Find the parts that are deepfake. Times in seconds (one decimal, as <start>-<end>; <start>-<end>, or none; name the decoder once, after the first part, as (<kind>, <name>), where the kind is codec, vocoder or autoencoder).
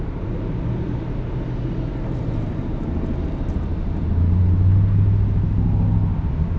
none